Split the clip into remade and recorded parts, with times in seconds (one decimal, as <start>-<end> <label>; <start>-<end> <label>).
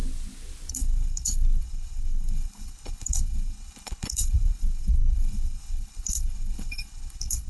0.0-0.7 recorded; 0.7-7.5 remade